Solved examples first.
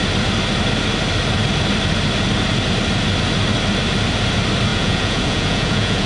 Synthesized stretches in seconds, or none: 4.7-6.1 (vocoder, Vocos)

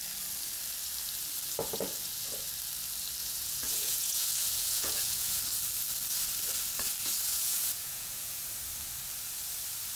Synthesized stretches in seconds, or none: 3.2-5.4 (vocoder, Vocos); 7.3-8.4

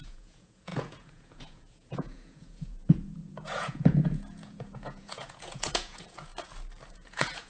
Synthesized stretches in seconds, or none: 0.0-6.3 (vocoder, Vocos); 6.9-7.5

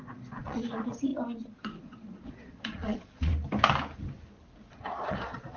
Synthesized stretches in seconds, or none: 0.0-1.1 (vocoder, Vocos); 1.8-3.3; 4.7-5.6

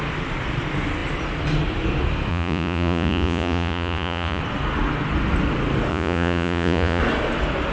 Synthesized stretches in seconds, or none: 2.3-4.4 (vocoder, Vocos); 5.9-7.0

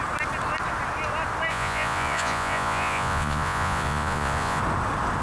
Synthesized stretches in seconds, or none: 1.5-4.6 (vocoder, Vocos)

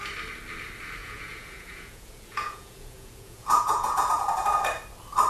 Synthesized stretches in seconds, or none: 1.0-4.2 (vocoder, Vocos)